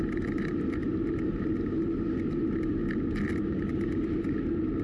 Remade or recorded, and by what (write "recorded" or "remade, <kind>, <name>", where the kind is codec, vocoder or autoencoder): recorded